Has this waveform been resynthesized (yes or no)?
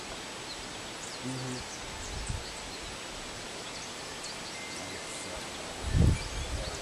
no